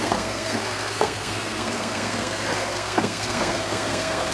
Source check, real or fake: fake